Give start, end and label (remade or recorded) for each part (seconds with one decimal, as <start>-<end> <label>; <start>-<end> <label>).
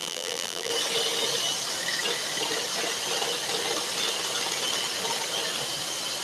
0.0-0.7 remade; 0.7-6.2 recorded